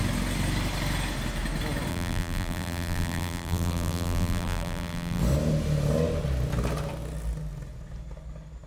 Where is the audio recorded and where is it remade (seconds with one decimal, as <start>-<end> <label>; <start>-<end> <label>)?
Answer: 0.0-1.9 recorded; 1.9-5.2 remade; 5.2-8.7 recorded

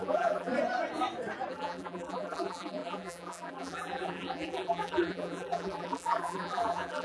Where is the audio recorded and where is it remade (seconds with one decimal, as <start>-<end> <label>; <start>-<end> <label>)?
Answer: 0.0-0.5 remade; 0.5-1.5 recorded; 1.5-7.0 remade